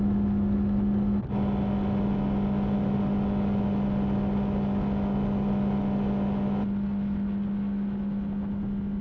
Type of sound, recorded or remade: recorded